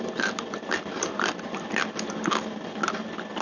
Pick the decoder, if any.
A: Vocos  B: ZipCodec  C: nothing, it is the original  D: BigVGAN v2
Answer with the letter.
C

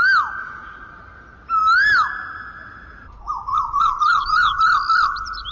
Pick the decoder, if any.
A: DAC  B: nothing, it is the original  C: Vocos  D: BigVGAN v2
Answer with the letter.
B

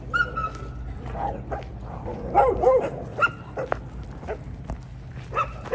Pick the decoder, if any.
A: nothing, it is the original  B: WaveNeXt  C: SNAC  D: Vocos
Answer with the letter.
A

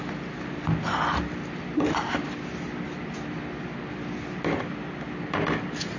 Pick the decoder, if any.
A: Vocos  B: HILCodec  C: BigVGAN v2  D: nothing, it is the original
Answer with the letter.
D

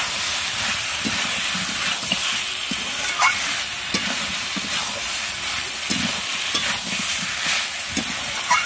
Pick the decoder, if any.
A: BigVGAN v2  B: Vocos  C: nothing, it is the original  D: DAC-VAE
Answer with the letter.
C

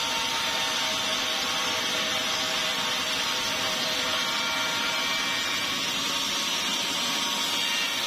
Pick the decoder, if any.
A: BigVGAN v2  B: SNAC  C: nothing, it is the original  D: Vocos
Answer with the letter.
C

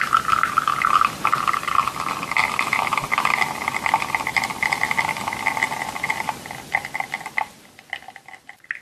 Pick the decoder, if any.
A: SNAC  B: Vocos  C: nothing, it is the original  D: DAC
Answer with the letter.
C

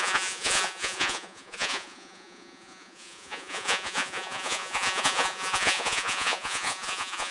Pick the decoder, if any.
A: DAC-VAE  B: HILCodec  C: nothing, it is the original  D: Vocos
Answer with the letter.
D